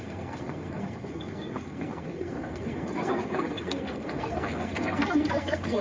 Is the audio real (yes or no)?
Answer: no